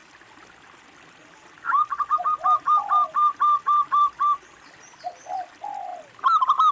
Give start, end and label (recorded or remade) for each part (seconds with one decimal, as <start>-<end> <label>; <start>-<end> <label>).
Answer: 0.0-6.7 recorded

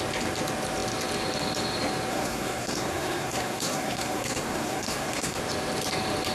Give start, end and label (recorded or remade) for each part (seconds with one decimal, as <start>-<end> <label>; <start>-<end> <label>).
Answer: 0.0-2.1 recorded; 2.1-5.4 remade; 5.4-6.3 recorded

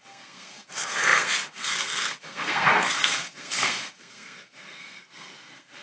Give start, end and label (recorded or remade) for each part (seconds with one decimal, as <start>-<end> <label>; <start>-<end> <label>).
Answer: 0.0-5.8 remade

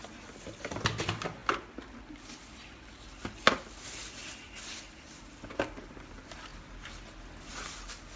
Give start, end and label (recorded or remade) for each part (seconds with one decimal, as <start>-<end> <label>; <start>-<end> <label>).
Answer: 0.0-8.2 recorded

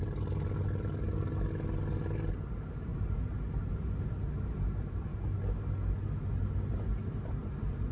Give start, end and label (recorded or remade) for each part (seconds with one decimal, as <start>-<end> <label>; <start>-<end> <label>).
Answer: 0.0-7.9 recorded

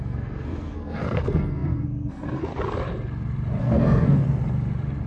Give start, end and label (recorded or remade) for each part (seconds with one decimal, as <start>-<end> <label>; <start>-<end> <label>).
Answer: 0.0-2.5 remade; 2.5-3.6 recorded; 3.6-4.2 remade; 4.2-5.1 recorded

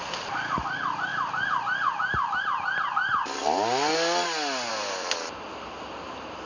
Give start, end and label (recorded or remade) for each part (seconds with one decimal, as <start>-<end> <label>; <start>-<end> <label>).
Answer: 0.0-6.5 recorded

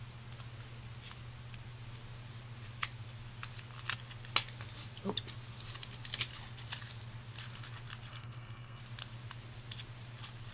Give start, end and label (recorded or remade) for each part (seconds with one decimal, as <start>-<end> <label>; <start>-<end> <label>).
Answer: 0.0-8.1 recorded; 8.1-8.8 remade; 8.8-10.5 recorded